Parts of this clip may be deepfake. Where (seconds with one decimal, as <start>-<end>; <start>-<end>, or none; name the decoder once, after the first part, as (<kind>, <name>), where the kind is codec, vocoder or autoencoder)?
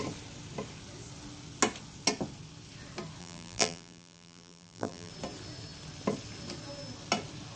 3.2-5.1 (vocoder, BigVGAN v2)